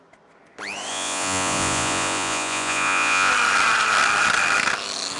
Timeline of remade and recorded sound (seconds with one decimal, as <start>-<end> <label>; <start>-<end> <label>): 0.0-0.9 recorded; 0.9-3.3 remade; 3.3-5.2 recorded